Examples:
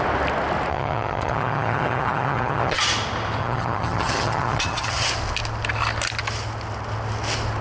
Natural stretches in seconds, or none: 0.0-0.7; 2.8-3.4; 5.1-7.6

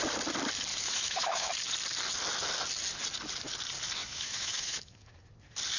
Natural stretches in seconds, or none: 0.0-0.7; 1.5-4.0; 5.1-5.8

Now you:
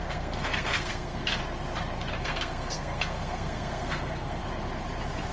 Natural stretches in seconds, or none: 1.4-2.2; 4.4-5.3

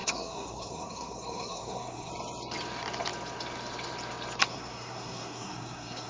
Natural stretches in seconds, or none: 2.1-4.5

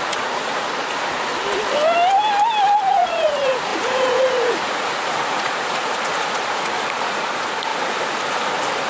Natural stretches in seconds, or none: 1.3-2.9; 7.7-8.9

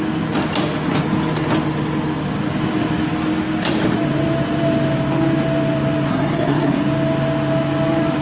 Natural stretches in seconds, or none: 0.0-6.1; 6.8-8.2

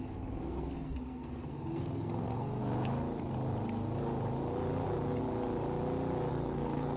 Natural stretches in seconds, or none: 2.6-6.3